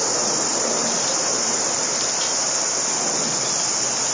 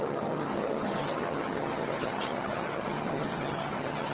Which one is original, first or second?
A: first